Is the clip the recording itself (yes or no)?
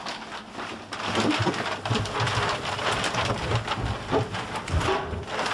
yes